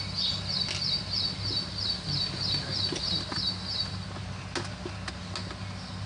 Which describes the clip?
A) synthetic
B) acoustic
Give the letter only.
B